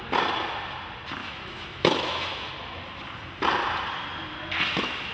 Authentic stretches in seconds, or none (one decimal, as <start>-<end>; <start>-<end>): 0.0-1.2; 2.5-5.1